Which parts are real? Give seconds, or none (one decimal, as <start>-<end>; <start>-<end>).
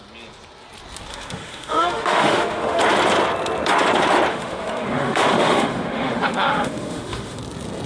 0.0-1.1; 2.8-4.3; 7.4-7.9